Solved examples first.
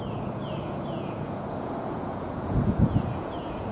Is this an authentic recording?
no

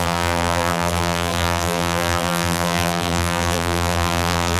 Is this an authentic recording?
no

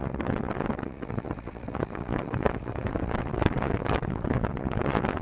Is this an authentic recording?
no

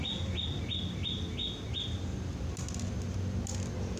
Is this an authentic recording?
yes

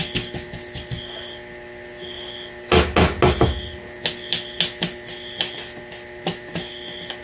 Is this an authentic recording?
yes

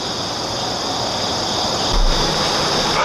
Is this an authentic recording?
yes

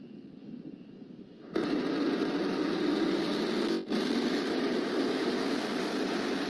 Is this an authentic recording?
yes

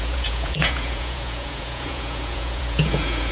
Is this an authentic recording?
no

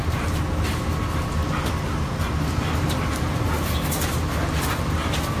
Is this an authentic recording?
yes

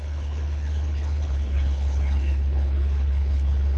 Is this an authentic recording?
no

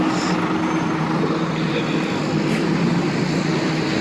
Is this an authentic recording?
yes